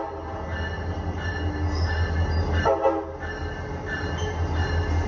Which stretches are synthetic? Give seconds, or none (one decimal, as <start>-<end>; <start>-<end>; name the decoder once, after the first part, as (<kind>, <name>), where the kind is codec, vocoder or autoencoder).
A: none

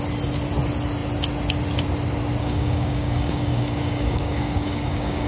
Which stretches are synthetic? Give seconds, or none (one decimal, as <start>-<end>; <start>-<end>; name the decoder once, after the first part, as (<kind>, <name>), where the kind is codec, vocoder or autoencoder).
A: 2.4-5.3 (codec, DAC)